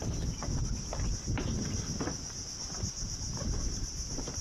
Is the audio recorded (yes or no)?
yes